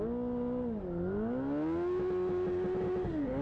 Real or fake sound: real